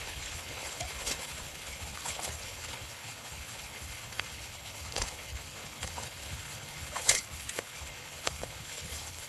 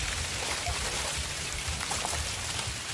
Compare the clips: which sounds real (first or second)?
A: second